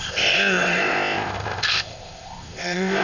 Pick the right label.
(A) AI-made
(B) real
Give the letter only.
A